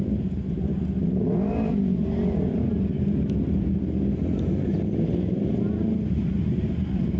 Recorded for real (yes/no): yes